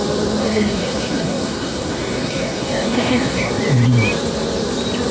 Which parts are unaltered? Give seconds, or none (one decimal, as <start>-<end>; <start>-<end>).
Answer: 0.0-0.4; 3.5-5.1